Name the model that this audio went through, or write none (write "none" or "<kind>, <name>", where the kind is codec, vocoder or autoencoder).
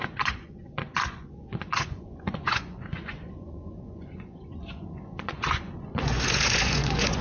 vocoder, Vocos